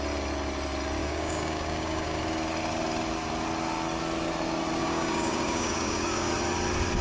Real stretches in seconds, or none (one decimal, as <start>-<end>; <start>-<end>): 0.0-1.0; 2.2-4.8; 6.3-7.0

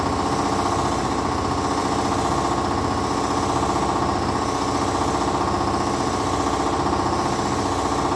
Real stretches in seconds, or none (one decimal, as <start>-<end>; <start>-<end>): 0.0-8.2